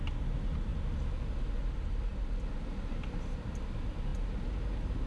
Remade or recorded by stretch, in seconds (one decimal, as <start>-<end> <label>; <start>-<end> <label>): 0.0-5.1 recorded